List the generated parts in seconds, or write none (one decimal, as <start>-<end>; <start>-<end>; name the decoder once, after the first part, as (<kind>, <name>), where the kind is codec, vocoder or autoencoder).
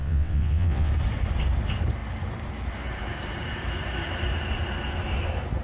0.0-0.9 (vocoder, WaveNeXt)